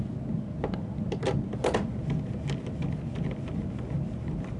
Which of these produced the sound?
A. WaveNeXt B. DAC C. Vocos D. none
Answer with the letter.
D